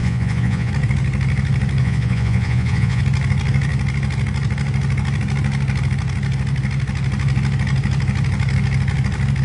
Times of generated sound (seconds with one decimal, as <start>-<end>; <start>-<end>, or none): 0.0-0.7; 1.8-3.0